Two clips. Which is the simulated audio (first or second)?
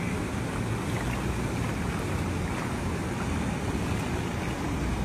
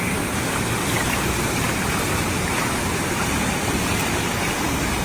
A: second